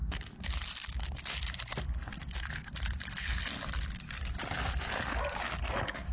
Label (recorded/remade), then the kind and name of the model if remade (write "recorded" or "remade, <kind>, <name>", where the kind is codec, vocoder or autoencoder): recorded